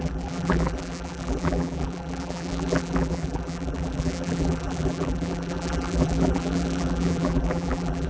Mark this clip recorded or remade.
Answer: remade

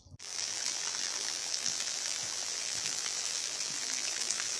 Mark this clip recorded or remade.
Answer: remade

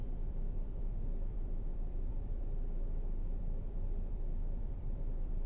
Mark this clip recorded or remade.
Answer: remade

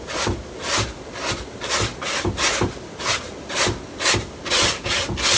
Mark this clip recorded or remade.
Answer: recorded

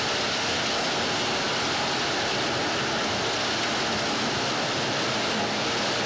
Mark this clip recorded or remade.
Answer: recorded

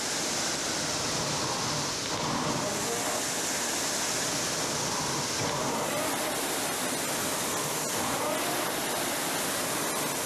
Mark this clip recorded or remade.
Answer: recorded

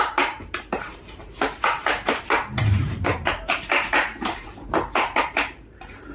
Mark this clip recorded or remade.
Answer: remade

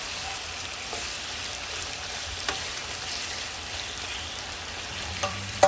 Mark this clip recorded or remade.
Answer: remade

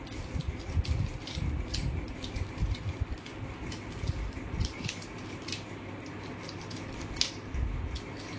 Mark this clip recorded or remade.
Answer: recorded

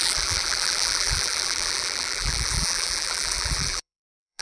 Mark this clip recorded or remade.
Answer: remade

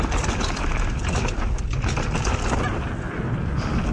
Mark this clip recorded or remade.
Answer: recorded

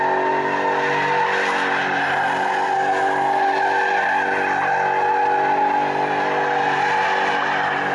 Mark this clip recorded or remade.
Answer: recorded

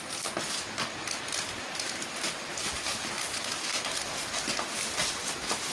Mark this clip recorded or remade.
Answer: recorded